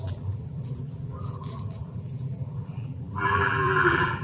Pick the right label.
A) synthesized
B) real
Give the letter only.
A